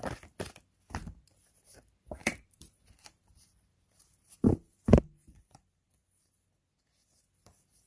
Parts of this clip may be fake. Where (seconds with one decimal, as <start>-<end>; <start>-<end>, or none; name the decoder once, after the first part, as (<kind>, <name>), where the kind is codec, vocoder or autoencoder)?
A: 2.2-5.9 (vocoder, BigVGAN v2)